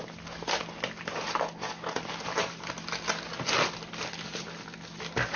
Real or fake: real